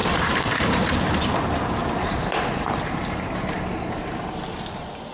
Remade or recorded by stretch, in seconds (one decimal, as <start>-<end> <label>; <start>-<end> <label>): 0.0-1.0 remade; 1.0-1.8 recorded; 1.8-4.1 remade; 4.1-5.1 recorded